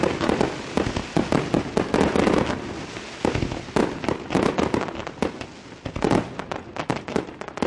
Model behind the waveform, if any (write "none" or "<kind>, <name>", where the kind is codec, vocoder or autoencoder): none